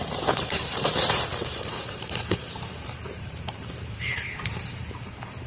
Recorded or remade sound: remade